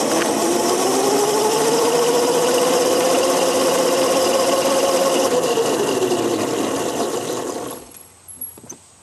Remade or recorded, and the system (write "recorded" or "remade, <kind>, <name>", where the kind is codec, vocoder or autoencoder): recorded